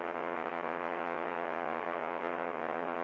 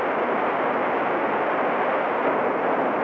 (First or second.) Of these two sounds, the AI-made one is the first